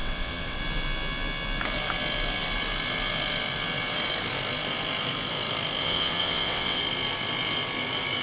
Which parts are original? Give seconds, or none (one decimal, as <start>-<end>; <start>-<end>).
0.6-5.8; 6.8-8.2